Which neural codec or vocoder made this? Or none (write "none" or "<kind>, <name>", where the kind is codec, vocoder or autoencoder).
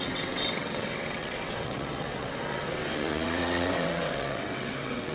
vocoder, WaveNeXt